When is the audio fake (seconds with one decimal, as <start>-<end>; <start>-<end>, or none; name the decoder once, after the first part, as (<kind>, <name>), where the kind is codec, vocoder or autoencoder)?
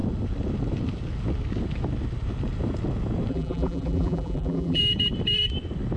3.3-4.8 (vocoder, BigVGAN v2)